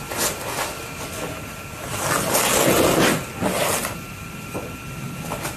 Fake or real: real